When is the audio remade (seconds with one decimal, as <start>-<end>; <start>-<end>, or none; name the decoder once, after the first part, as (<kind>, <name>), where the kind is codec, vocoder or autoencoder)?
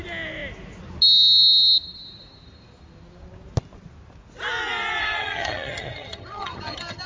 5.0-7.1 (vocoder, HiFi-GAN)